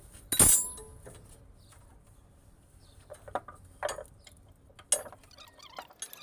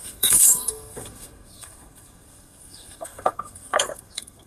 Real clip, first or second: first